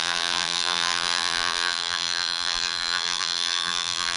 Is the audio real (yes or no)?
no